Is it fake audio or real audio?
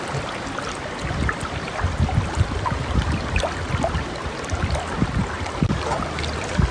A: real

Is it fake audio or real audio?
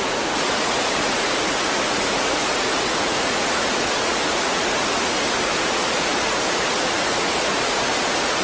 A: fake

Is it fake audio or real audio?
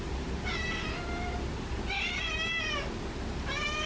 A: real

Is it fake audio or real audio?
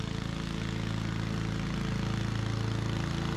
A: real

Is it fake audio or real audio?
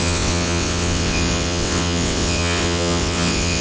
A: fake